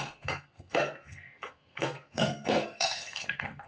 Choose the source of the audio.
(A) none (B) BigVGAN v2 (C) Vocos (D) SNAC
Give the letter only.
D